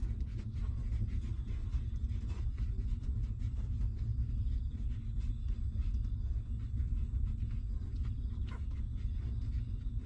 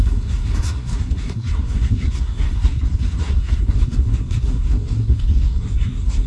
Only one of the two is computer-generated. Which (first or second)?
second